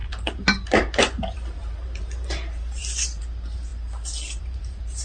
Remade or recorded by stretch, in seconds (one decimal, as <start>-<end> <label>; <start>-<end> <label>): 0.0-3.7 remade; 3.7-4.4 recorded; 4.4-5.0 remade